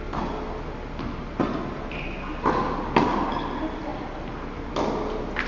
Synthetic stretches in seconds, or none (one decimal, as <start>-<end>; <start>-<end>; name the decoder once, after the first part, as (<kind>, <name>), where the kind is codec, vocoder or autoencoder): none